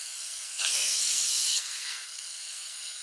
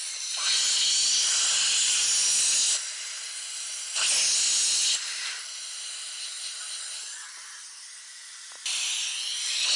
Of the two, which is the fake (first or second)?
first